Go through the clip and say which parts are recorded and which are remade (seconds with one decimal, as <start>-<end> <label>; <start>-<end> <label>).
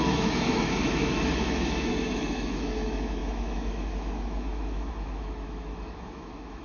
0.0-6.6 remade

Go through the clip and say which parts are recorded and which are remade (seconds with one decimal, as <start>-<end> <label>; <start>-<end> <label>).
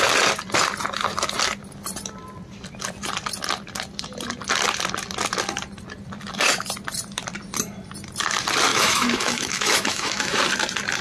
0.0-8.7 recorded; 8.7-10.4 remade; 10.4-11.0 recorded